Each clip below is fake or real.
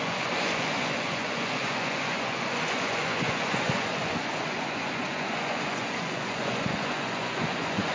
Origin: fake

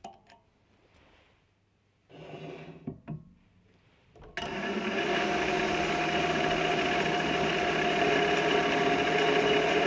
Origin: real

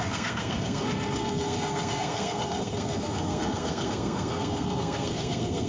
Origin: fake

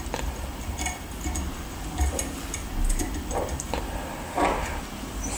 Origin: real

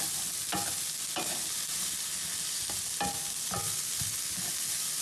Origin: real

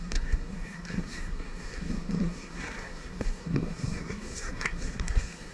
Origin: fake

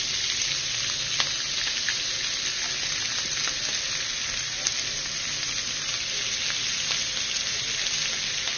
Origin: real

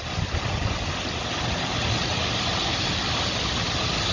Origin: real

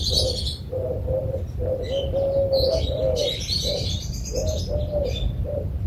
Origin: real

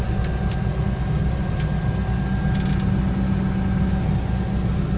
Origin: real